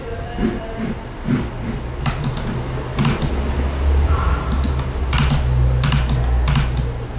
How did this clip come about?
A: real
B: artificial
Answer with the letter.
A